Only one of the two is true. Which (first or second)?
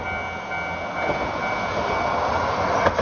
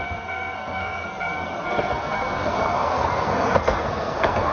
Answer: first